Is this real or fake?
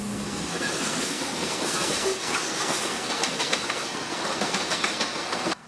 fake